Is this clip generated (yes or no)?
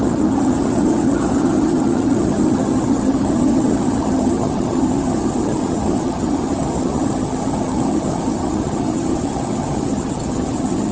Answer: yes